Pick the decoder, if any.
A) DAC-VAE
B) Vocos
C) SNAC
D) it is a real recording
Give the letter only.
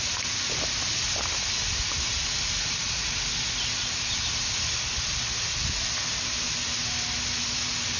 D